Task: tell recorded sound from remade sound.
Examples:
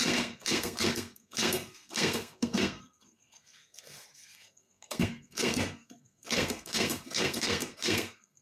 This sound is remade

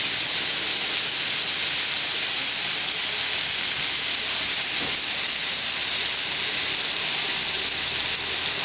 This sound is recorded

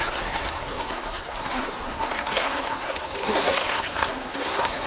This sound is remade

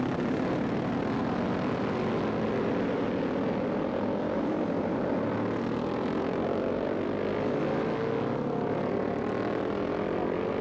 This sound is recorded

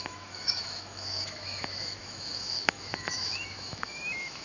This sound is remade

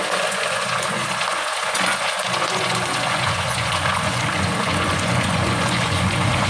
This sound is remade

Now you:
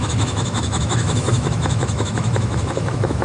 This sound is remade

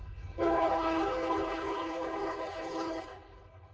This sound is remade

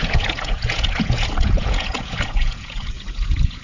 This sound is remade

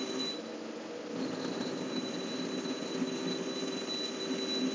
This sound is recorded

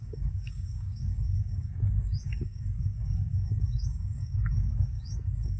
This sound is remade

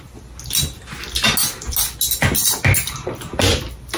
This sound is recorded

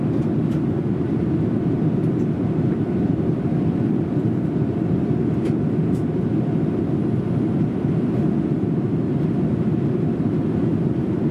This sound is recorded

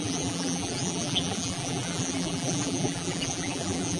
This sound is remade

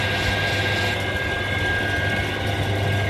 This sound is recorded